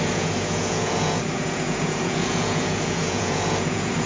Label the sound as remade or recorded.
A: remade